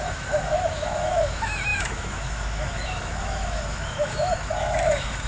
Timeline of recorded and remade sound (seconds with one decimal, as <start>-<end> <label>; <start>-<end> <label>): 0.0-5.3 remade